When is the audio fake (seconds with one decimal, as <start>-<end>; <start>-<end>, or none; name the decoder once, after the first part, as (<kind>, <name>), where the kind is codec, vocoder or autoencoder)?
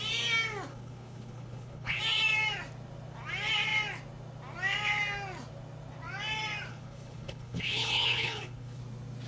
0.7-2.0 (codec, HILCodec); 6.7-8.8